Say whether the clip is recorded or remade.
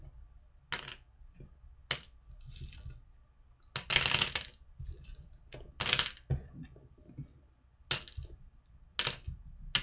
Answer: recorded